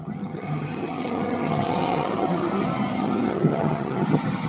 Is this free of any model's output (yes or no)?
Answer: no